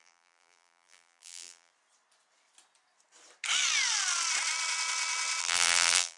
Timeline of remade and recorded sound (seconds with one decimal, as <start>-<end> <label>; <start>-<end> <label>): 0.0-1.7 remade; 1.7-5.4 recorded; 5.4-6.2 remade